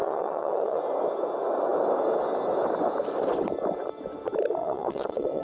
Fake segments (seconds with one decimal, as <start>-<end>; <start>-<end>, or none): 0.0-0.8; 4.6-5.4